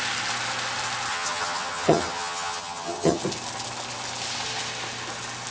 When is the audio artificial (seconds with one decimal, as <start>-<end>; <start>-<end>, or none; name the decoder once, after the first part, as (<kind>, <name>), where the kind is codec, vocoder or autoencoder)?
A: 1.1-3.2 (vocoder, HiFi-GAN)